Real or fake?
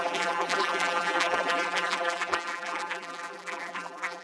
fake